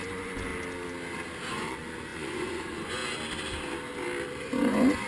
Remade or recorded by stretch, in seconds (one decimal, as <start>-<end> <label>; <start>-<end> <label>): 0.0-0.5 remade; 0.5-1.5 recorded; 1.5-3.0 remade; 3.0-4.4 recorded; 4.4-5.1 remade